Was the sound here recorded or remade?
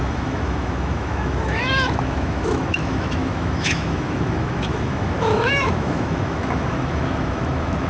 remade